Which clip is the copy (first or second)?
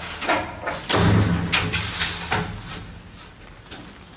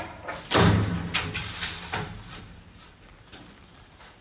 second